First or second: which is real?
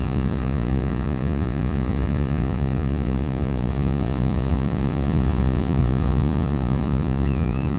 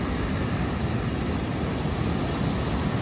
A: second